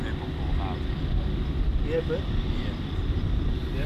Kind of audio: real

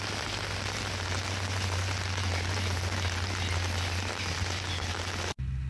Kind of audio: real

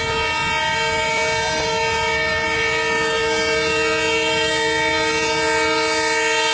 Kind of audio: real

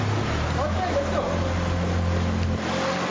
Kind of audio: real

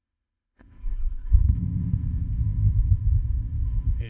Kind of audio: fake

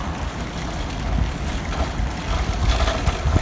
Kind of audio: real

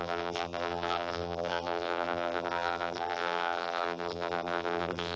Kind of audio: fake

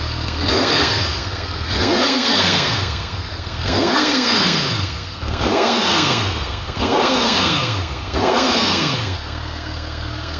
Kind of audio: fake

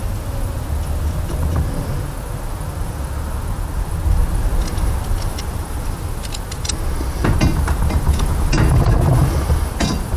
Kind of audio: real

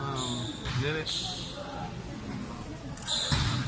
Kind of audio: real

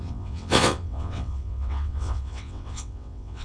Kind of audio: fake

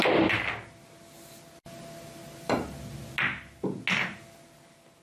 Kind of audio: real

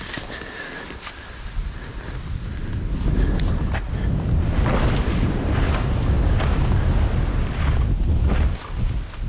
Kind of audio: real